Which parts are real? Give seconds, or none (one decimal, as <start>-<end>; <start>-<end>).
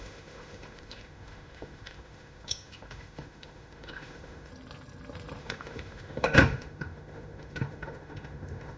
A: 4.5-5.4